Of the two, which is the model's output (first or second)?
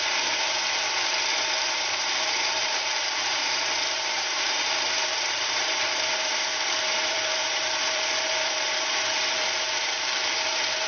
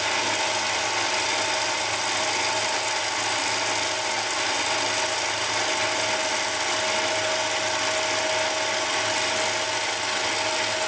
first